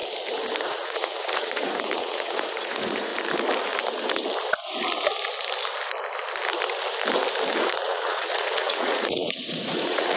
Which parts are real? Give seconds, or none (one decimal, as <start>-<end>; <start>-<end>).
0.0-0.6; 3.1-7.6